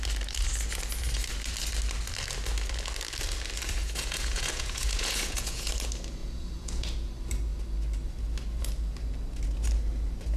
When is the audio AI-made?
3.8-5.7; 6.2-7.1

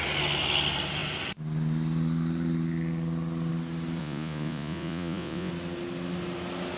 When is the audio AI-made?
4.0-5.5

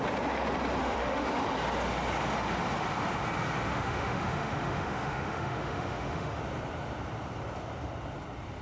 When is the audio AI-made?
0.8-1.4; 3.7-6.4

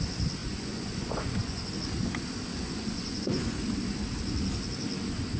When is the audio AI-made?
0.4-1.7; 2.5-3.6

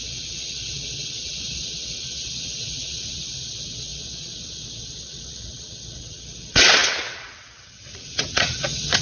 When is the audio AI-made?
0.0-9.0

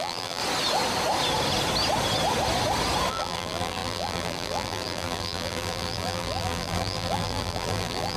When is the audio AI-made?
0.0-0.4; 3.1-8.2